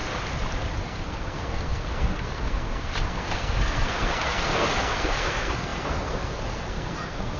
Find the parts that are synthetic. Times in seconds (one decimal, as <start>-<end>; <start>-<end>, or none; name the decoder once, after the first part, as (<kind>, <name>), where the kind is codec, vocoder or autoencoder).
0.8-7.4 (codec, SNAC)